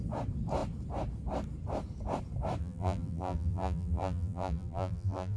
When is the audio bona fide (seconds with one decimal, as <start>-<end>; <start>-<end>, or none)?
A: 0.0-2.6